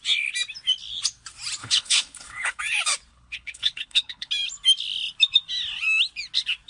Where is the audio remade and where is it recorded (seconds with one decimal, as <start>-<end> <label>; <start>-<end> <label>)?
0.0-1.6 recorded; 1.6-2.6 remade; 2.6-3.1 recorded; 3.1-4.3 remade; 4.3-6.7 recorded